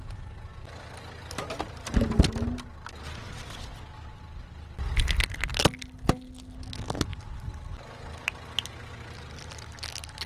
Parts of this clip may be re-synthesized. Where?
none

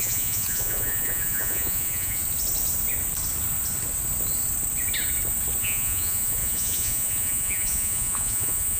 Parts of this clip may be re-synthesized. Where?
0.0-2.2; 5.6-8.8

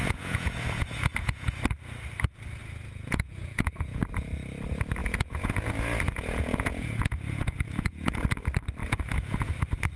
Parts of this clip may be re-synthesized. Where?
0.0-1.5; 2.6-4.0; 5.0-8.2; 8.8-9.5

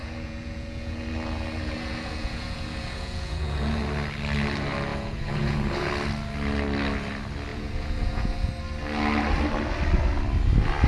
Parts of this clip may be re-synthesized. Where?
0.0-3.8; 4.9-5.9; 7.5-8.5

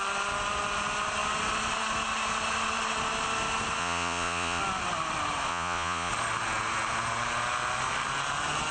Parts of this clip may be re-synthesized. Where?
3.8-4.6; 5.5-6.1

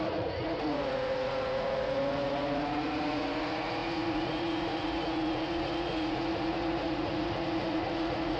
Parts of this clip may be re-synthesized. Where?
0.0-8.4